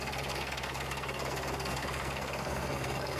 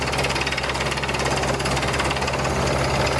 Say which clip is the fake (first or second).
first